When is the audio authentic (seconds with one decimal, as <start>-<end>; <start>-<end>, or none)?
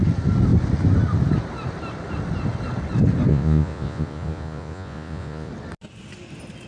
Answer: 0.0-3.3; 5.5-6.7